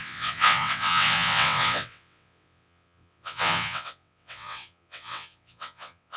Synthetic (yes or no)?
yes